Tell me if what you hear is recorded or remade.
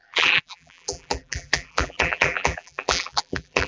remade